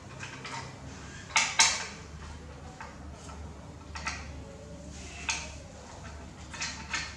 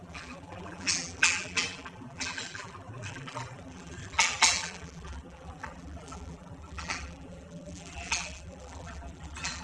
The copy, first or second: second